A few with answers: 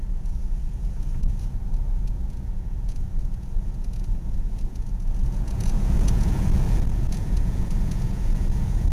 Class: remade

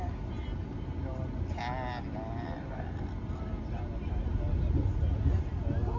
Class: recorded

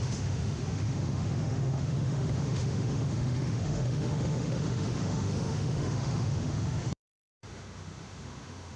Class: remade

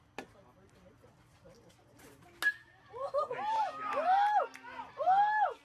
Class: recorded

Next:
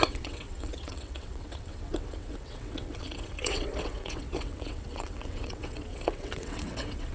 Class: remade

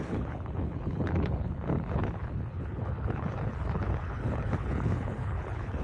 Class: remade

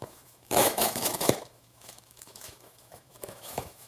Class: remade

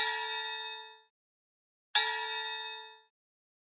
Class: recorded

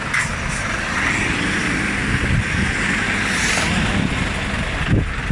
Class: recorded